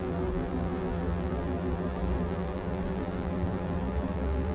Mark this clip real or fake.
fake